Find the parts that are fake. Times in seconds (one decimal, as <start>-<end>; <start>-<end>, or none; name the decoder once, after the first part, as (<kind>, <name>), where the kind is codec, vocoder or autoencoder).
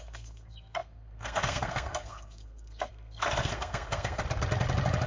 0.0-4.2 (codec, SNAC)